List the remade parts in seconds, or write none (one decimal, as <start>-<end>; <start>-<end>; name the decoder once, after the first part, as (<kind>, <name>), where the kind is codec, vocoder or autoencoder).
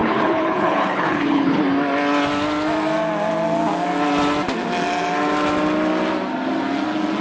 0.0-1.6 (codec, HILCodec)